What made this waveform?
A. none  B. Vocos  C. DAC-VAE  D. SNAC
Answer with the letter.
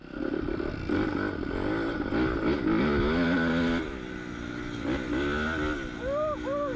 A